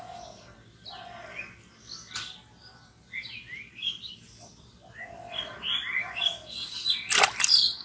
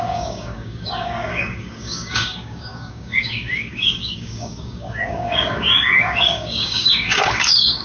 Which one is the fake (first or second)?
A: second